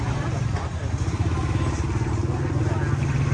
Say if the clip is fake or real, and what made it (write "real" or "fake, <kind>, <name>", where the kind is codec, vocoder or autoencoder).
real